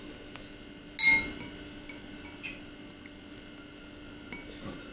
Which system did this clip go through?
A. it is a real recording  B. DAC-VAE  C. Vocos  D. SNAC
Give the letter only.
A